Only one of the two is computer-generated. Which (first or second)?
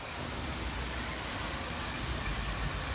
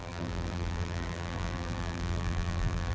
second